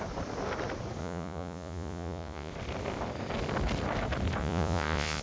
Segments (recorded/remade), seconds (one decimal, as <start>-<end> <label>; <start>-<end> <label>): 0.0-1.0 recorded; 1.0-2.5 remade; 2.5-4.4 recorded; 4.4-5.2 remade